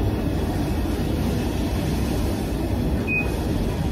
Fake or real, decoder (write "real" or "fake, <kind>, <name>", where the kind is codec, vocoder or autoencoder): real